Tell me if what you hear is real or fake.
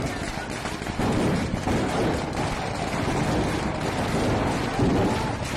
real